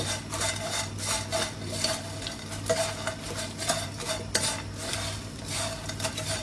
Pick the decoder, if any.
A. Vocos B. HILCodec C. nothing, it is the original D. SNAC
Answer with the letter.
C